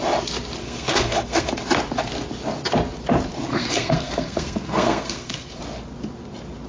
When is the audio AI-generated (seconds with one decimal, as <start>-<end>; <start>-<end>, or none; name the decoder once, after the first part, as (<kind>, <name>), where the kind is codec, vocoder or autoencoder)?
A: 0.6-1.5 (codec, SNAC); 3.5-5.6